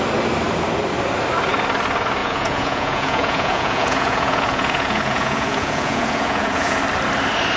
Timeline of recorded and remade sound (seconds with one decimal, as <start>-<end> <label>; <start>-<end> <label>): 0.0-2.2 recorded; 2.2-6.8 remade; 6.8-7.6 recorded